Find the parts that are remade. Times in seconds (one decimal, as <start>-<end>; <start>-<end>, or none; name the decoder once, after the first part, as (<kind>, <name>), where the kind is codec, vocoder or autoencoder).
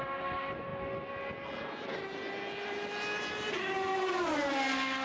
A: none